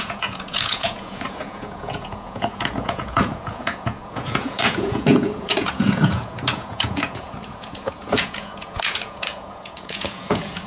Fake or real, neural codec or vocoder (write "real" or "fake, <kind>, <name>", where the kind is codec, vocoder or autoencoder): fake, vocoder, Vocos